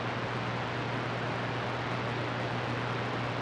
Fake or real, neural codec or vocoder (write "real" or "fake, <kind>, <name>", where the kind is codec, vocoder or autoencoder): real